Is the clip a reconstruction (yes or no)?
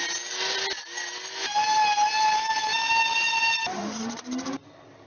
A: no